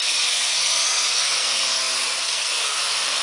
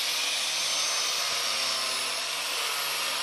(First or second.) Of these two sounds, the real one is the second